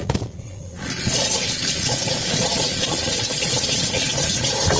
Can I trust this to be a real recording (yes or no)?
no